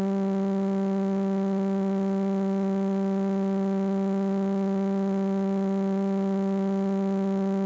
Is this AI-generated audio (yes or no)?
no